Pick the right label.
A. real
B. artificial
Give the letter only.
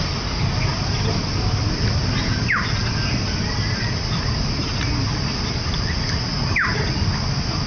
A